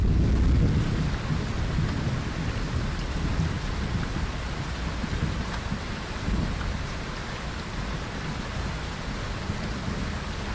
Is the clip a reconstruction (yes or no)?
no